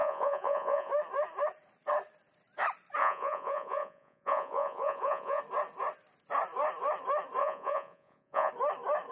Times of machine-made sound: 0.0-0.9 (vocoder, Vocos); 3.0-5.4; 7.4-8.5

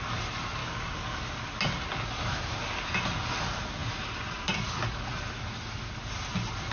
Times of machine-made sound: 0.6-1.2 (codec, DAC)